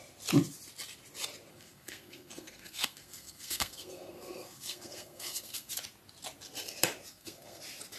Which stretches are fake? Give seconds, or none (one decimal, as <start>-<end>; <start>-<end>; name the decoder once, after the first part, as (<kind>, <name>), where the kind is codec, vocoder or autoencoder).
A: 1.5-5.7 (codec, SNAC); 7.1-7.6

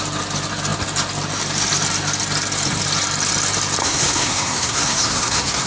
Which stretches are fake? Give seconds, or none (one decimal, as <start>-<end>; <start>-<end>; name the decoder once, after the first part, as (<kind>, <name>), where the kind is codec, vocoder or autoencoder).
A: 3.8-5.7 (codec, SNAC)

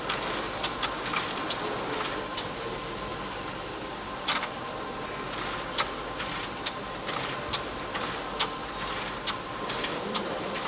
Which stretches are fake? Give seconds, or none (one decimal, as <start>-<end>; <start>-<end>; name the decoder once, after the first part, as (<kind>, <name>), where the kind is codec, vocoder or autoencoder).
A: none